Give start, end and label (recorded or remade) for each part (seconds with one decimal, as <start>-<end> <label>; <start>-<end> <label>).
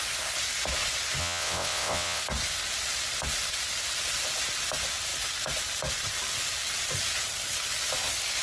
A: 0.0-1.2 recorded; 1.2-2.2 remade; 2.2-8.4 recorded